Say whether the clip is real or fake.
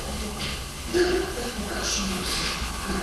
fake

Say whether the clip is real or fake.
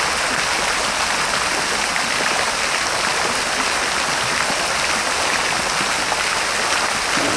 real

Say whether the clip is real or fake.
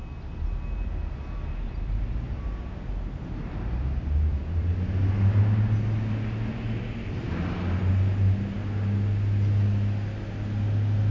real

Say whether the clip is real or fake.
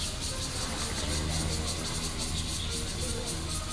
real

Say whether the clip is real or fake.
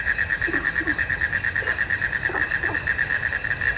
real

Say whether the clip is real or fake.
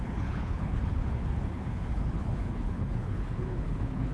fake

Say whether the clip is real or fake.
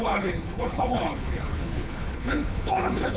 fake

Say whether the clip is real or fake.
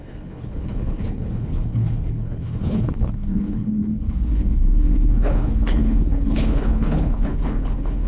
fake